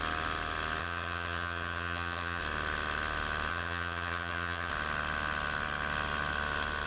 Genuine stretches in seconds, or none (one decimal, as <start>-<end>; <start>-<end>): 0.0-0.8; 2.4-3.5; 4.7-6.9